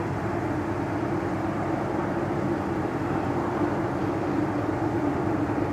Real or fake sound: fake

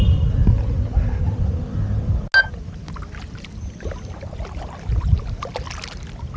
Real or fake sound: real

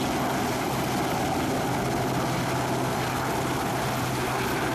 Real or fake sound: real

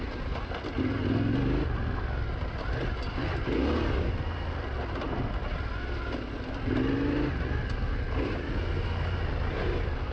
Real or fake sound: real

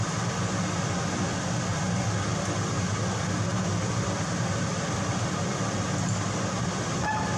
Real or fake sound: fake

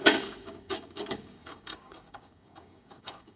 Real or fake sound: fake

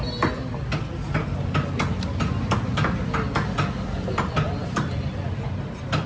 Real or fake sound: real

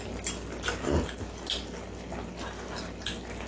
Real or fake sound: real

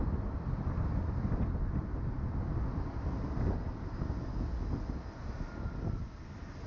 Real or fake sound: real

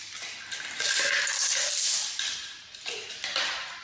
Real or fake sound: real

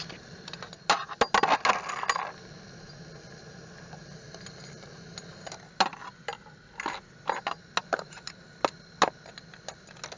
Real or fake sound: real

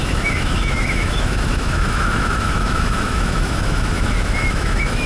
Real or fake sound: fake